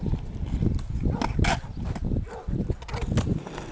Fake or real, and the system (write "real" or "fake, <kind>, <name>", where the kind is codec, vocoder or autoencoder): real